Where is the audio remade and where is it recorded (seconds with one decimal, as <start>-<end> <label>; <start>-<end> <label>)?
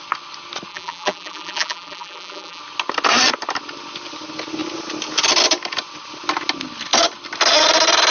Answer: 0.0-0.7 recorded; 0.7-2.6 remade; 2.6-8.1 recorded